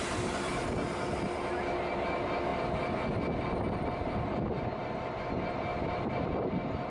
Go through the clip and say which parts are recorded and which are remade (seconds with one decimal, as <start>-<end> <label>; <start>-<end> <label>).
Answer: 0.0-5.7 recorded; 5.7-6.3 remade; 6.3-6.9 recorded